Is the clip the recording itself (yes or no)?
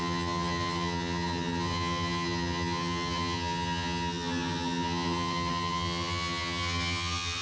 no